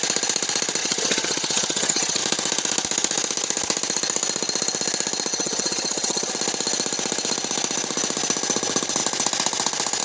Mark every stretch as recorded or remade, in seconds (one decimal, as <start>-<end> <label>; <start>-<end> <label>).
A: 0.0-0.8 recorded; 0.8-2.2 remade; 2.2-5.3 recorded; 5.3-6.3 remade; 6.3-10.0 recorded